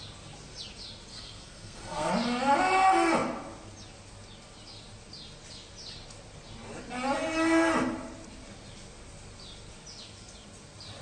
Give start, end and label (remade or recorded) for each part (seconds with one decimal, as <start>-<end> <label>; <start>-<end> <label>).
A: 0.0-1.1 recorded; 1.1-2.1 remade; 2.1-11.0 recorded